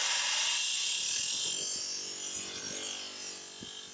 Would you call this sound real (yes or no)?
yes